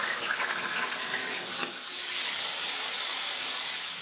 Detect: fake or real fake